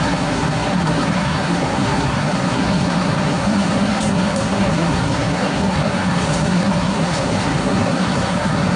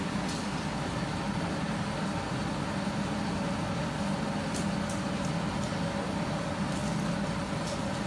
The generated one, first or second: first